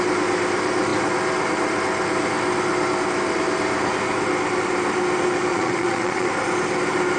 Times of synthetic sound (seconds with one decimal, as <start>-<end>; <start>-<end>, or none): 5.5-6.3